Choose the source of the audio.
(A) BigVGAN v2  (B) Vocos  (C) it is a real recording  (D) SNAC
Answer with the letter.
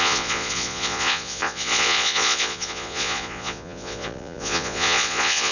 B